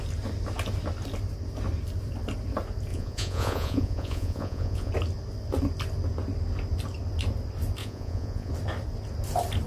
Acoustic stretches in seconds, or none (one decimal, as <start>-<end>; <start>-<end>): 0.0-2.9; 4.9-7.8; 8.5-9.7